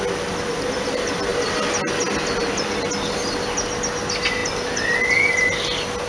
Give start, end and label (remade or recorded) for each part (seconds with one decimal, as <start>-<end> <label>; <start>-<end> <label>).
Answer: 0.0-1.3 recorded; 1.3-1.9 remade; 1.9-6.1 recorded

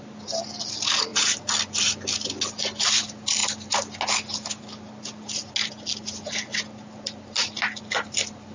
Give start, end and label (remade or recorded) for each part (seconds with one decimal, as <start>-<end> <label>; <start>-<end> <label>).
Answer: 0.0-8.5 recorded

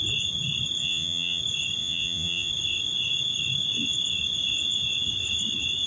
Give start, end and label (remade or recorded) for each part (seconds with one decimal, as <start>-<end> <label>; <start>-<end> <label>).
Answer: 0.0-0.8 recorded; 0.8-1.4 remade; 1.4-1.8 recorded; 1.8-2.5 remade; 2.5-5.9 recorded

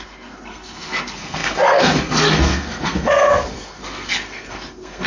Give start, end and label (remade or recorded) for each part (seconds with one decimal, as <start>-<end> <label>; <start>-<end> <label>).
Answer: 0.0-5.1 remade

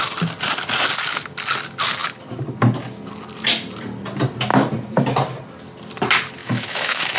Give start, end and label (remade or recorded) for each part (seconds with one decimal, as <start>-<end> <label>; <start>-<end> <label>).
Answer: 0.0-6.4 recorded; 6.4-7.2 remade

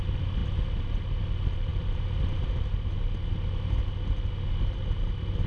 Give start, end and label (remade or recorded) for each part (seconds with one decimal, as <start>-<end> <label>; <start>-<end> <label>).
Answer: 0.0-5.5 recorded